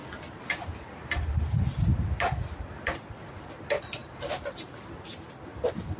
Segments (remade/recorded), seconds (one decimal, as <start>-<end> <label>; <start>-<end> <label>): 0.0-0.7 recorded; 0.7-6.0 remade